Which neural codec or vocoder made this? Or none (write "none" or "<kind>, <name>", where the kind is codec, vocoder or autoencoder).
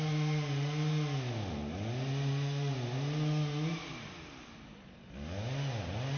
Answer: none